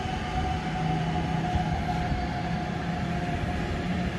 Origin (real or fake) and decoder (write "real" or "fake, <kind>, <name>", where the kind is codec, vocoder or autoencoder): real